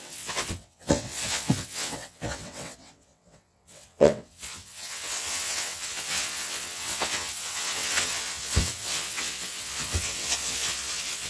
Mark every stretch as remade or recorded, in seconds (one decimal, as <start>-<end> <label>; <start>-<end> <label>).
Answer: 0.0-11.3 remade